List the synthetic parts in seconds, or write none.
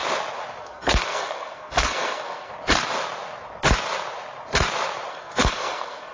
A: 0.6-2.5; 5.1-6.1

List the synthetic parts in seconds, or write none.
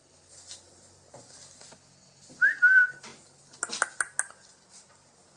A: none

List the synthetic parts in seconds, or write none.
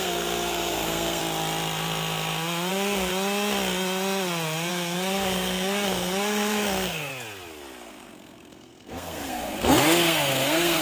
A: 0.0-1.2; 2.7-3.1; 4.7-7.1; 7.9-10.8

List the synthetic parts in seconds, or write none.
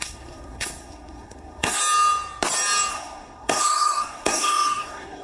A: 0.0-1.8; 2.9-5.2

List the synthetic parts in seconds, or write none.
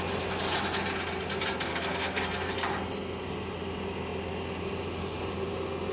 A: 1.7-2.5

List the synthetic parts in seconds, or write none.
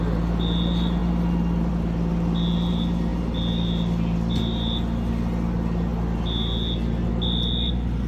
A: none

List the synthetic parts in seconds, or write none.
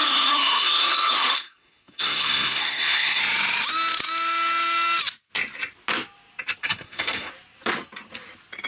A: 0.0-3.2; 6.6-7.3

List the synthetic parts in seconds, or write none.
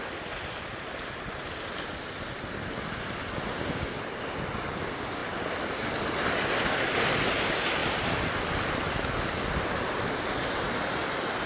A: none